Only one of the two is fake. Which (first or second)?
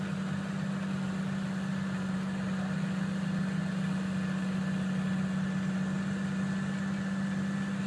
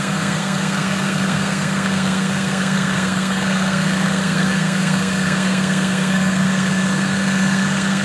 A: second